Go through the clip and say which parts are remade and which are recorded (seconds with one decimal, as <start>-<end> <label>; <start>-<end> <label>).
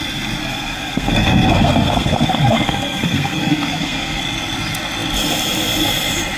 0.0-0.4 recorded; 0.4-4.2 remade; 4.2-6.4 recorded